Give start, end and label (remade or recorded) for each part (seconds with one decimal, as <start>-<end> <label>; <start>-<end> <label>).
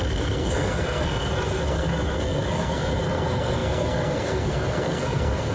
0.0-5.5 remade